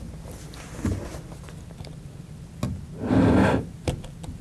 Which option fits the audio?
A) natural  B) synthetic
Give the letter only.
A